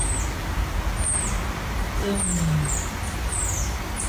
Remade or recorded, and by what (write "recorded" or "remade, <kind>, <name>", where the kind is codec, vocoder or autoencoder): recorded